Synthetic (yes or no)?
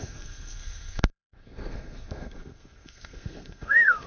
yes